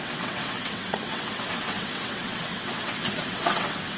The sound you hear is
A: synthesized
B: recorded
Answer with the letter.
A